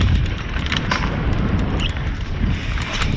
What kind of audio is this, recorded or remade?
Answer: remade